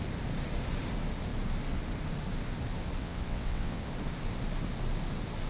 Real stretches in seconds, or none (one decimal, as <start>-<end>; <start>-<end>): 0.0-3.0; 3.8-5.5